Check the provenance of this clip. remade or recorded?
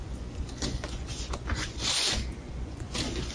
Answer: remade